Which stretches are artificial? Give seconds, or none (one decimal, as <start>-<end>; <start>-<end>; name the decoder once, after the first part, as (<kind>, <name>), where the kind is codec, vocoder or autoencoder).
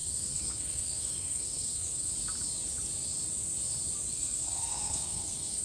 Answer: 0.0-2.1 (codec, SNAC); 4.1-5.6